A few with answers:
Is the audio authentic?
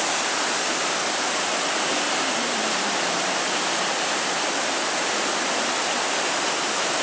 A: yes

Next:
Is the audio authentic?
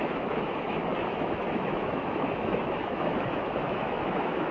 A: no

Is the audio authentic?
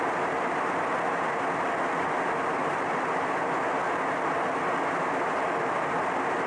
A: yes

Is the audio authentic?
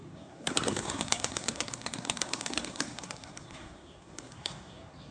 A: no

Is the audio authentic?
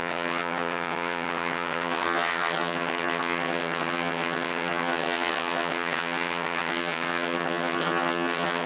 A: no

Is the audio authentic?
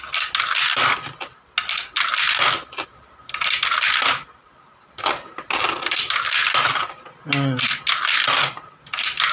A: yes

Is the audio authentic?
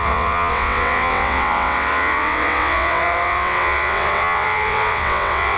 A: no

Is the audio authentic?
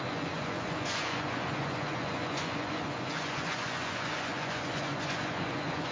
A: no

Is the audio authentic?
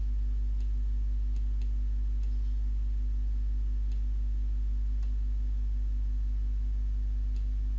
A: yes